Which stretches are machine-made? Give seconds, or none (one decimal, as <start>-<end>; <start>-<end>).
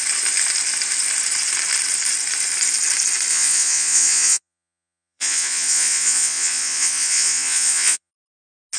3.3-8.1